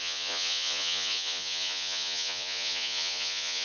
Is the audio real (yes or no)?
no